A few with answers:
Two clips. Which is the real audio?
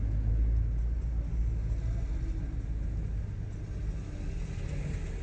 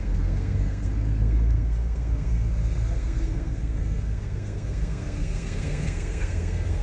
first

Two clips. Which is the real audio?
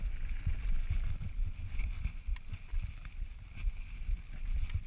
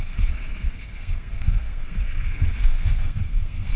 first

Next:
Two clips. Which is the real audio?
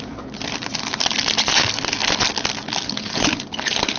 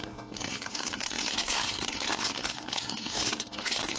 first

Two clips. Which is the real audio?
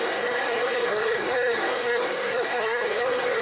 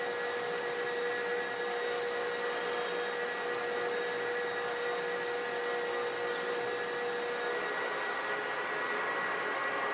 second